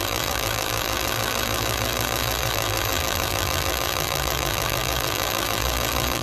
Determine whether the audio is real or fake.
fake